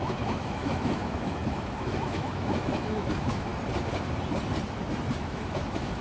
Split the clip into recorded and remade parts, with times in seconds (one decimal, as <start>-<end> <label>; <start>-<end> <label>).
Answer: 0.0-3.5 remade; 3.5-5.2 recorded; 5.2-6.0 remade